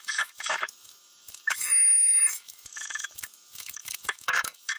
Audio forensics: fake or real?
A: fake